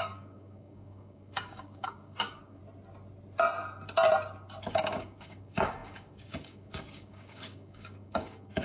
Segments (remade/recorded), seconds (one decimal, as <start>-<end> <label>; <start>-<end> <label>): 0.0-2.6 remade; 2.6-4.7 recorded; 4.7-8.6 remade